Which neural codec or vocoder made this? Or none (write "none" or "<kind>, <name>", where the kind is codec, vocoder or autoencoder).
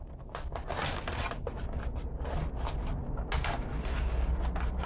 none